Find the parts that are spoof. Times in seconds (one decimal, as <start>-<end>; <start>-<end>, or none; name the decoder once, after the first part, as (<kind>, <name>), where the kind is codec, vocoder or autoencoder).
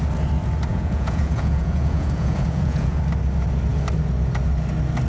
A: 0.7-3.0 (vocoder, Vocos)